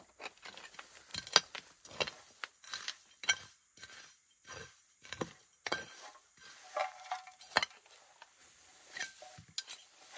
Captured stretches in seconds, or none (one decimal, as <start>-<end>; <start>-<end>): 0.0-4.2; 6.1-6.8; 7.6-8.4; 9.0-10.2